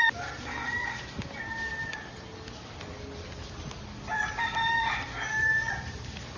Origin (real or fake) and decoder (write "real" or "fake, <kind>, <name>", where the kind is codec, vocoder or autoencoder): real